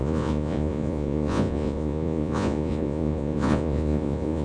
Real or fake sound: fake